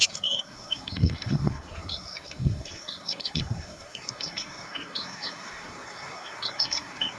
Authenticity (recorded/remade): remade